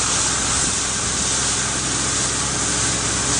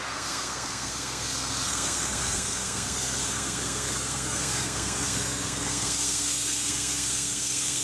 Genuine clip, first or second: first